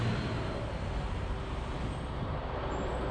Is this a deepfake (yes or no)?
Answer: no